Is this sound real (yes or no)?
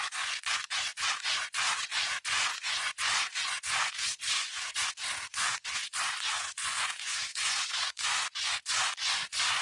no